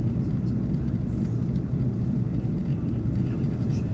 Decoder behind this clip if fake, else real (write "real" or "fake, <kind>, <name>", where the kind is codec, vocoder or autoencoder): real